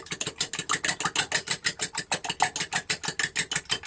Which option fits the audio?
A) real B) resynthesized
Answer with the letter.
A